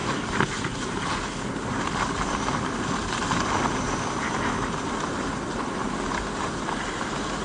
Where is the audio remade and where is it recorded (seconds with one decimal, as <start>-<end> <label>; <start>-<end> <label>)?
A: 0.0-7.4 recorded